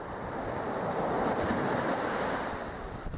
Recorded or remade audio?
recorded